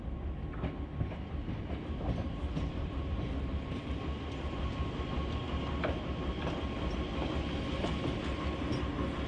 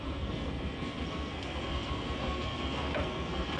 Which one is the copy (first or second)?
second